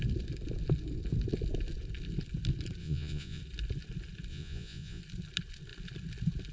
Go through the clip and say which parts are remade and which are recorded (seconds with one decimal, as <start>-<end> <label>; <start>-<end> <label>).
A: 0.0-2.8 recorded; 2.8-3.4 remade; 3.4-4.3 recorded; 4.3-5.0 remade; 5.0-6.5 recorded